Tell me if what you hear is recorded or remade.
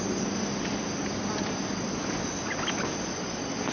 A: recorded